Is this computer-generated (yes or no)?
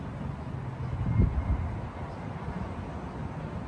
no